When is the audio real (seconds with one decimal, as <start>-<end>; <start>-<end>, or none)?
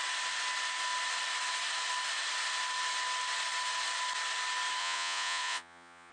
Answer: 0.0-4.8